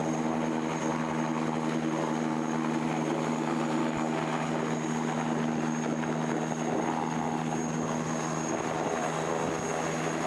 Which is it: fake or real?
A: real